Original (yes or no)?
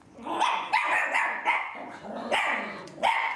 no